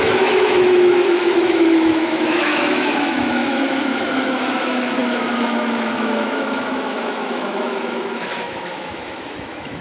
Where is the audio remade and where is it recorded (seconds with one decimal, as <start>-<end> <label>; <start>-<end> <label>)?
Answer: 0.0-9.8 remade